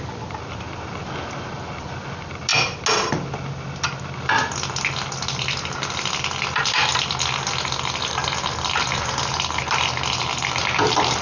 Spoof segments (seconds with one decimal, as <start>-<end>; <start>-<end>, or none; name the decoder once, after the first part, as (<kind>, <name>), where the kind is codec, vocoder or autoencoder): none